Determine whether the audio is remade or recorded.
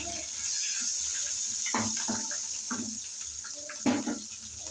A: recorded